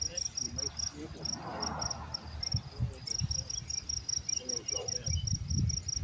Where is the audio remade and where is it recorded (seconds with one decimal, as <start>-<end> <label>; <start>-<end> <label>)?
0.0-6.0 recorded